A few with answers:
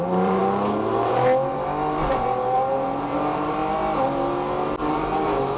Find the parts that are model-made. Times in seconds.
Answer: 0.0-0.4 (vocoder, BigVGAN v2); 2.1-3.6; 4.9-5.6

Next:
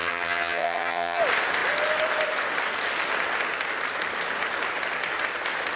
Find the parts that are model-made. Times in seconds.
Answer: 0.0-1.2 (vocoder, HiFi-GAN)

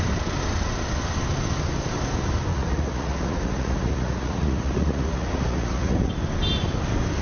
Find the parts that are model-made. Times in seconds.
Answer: 2.5-6.1 (vocoder, Vocos)

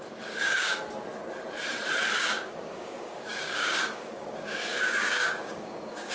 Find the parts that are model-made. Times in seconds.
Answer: 0.0-0.7 (codec, DAC); 2.2-6.1

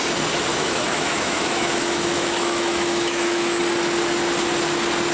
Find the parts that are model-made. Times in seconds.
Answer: 0.5-3.6 (autoencoder, DAC-VAE)

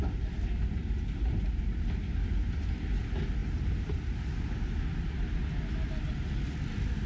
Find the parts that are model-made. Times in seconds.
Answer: none

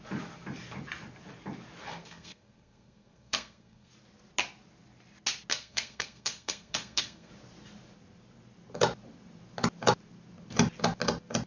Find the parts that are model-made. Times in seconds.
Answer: 1.8-3.9 (codec, SNAC); 5.5-7.3